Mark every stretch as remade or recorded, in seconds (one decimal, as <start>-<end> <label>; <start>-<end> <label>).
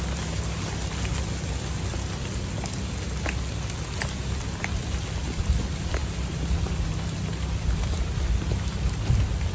0.0-9.5 recorded